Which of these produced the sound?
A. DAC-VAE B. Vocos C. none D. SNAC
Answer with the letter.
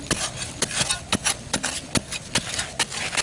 C